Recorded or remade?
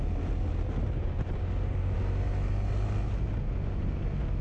recorded